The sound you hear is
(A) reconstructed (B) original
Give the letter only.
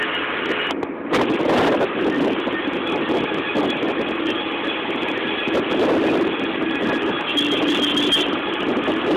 B